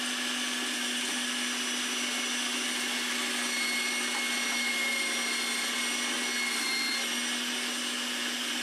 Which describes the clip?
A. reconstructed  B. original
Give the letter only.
B